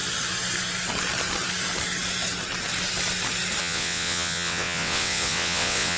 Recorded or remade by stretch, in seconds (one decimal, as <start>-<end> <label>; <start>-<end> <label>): 0.0-3.6 recorded; 3.6-6.0 remade